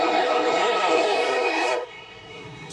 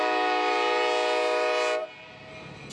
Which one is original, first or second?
second